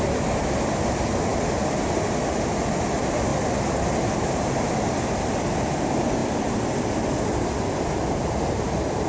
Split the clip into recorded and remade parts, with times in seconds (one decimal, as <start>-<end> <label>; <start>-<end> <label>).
0.0-9.1 recorded